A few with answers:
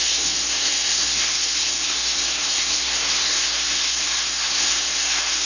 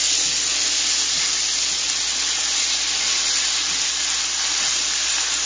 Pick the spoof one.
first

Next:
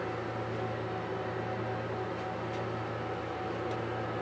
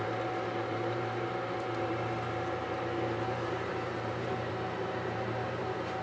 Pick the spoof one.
second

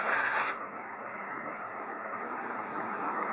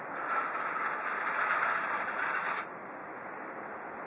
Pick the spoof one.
first